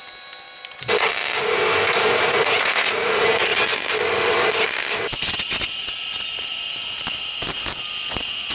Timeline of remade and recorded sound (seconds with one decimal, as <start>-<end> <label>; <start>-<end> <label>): 0.0-2.2 recorded; 2.2-3.5 remade; 3.5-8.1 recorded; 8.1-8.5 remade